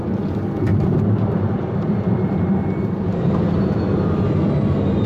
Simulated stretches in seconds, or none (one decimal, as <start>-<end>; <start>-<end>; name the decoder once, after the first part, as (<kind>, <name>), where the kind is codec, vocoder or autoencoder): 0.7-3.8 (vocoder, BigVGAN v2)